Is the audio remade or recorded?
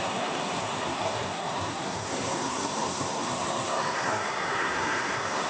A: remade